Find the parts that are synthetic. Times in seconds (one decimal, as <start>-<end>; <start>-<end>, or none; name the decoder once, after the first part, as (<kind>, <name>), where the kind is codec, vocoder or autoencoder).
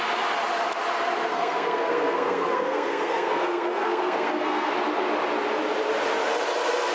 1.3-4.7 (codec, SNAC)